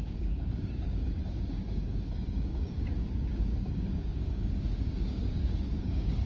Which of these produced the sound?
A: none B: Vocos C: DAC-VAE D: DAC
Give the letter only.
D